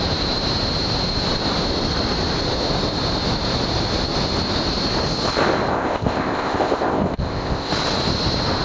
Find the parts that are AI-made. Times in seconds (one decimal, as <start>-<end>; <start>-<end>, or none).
5.7-7.7